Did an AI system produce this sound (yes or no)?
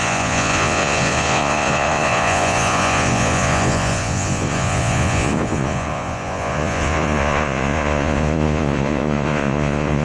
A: yes